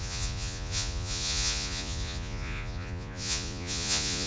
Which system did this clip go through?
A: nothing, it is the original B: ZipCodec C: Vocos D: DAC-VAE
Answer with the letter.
C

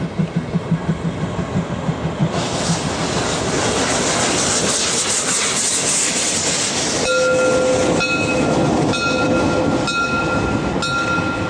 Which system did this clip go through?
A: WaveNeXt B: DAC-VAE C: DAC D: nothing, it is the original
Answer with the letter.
D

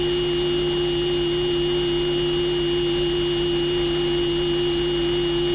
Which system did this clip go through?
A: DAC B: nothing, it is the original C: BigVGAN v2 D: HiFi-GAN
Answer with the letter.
B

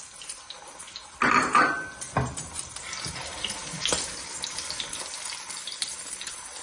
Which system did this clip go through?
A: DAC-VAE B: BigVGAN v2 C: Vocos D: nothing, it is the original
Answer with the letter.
D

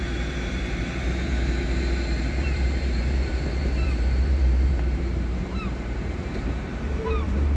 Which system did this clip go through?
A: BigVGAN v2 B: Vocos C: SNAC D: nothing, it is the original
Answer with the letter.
A